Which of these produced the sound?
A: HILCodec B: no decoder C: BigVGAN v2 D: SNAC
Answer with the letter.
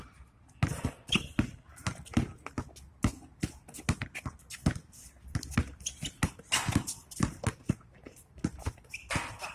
B